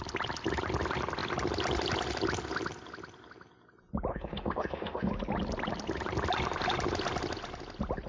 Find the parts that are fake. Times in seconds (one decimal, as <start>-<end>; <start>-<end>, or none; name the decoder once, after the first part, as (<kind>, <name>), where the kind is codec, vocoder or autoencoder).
4.1-5.1 (autoencoder, DAC-VAE)